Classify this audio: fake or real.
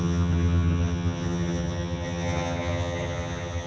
fake